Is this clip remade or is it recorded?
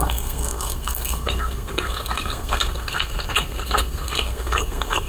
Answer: remade